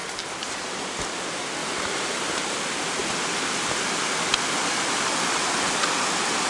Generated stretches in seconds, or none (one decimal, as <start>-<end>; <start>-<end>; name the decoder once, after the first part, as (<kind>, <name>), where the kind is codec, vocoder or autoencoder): 1.6-2.3 (vocoder, BigVGAN v2)